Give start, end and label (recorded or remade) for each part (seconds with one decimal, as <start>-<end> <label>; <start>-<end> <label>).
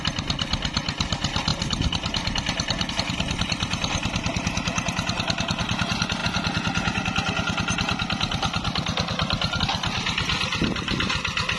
0.0-11.6 recorded